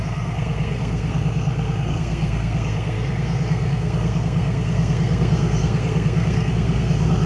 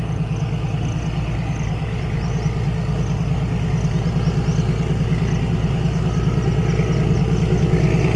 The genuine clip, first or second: second